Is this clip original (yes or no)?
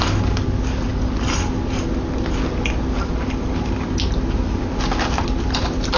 yes